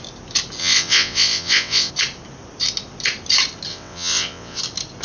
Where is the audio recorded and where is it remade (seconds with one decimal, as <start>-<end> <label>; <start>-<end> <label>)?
0.0-0.6 recorded; 0.6-1.9 remade; 1.9-3.7 recorded; 3.7-4.6 remade; 4.6-5.0 recorded